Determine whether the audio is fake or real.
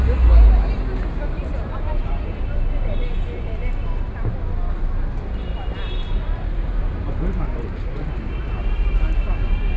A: real